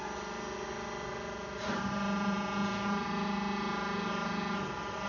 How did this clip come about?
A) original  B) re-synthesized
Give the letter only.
A